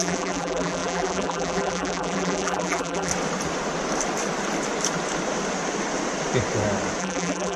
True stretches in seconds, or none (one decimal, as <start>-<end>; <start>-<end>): 3.1-7.0